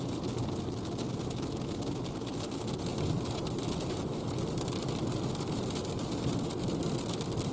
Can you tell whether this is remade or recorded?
recorded